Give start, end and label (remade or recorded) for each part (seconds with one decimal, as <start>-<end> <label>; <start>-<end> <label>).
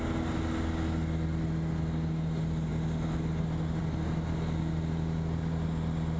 0.0-6.2 recorded